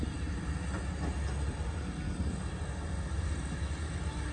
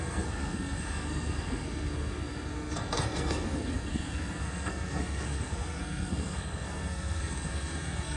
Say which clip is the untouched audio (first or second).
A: first